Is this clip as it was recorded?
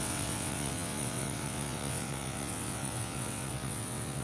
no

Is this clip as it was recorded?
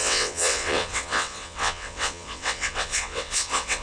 no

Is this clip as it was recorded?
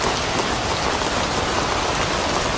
yes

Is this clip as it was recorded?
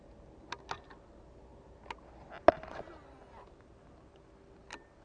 yes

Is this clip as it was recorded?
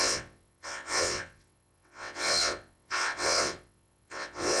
no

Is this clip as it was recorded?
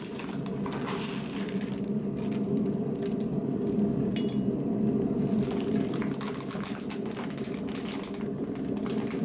yes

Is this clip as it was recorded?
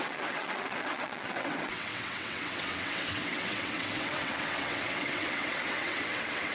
no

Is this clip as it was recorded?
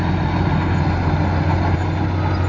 yes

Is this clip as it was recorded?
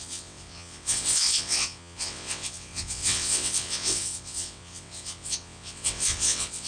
no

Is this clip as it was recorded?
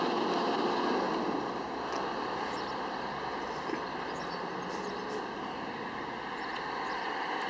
yes